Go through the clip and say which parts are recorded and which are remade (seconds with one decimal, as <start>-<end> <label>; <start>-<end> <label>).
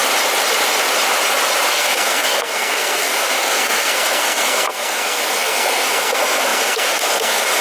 0.0-1.7 recorded; 1.7-7.6 remade